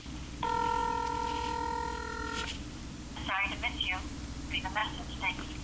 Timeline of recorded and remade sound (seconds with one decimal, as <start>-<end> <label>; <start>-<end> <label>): 0.0-5.6 recorded